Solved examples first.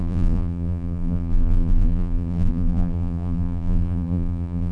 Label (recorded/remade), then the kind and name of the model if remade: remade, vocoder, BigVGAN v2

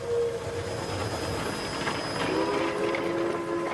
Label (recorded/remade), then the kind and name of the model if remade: recorded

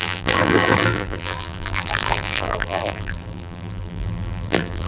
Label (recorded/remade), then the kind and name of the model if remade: remade, vocoder, BigVGAN v2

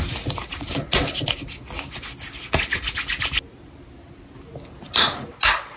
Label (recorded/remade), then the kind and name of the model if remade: recorded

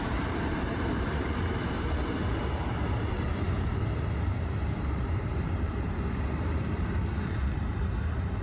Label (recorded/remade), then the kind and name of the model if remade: remade, vocoder, BigVGAN v2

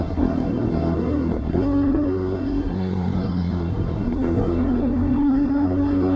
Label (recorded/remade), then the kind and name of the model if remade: remade, codec, SNAC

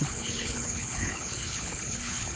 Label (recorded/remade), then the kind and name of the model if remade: remade, codec, HILCodec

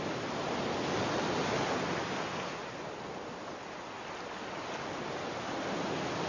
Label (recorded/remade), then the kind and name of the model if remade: recorded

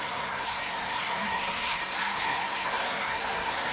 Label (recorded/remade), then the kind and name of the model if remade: remade, codec, SNAC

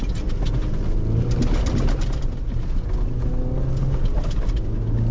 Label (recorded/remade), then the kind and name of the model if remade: recorded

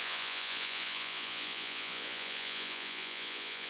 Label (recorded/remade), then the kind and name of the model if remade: remade, vocoder, Vocos